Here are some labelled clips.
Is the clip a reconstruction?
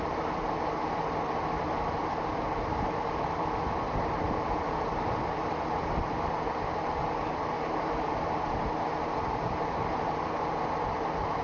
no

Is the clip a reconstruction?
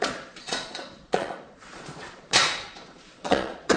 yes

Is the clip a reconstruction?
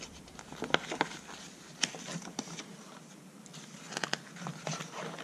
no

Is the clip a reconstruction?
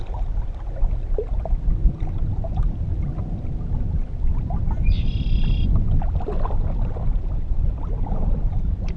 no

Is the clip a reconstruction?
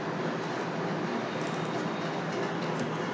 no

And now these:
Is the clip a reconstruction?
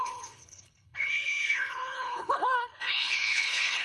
yes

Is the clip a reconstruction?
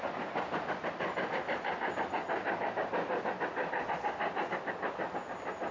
no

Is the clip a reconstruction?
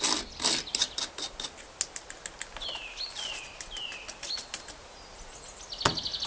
no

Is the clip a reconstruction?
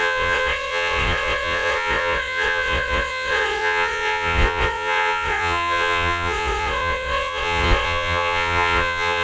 yes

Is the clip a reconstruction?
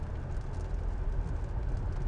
no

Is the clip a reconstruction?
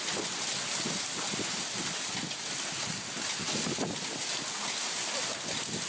no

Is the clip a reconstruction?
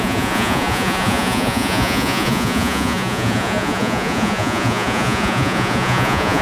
yes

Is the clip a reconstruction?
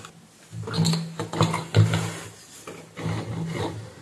no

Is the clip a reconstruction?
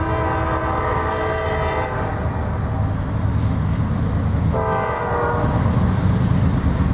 no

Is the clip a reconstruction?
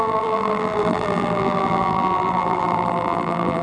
yes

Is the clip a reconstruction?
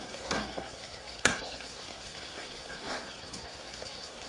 yes